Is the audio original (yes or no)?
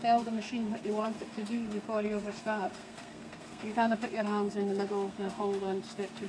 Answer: no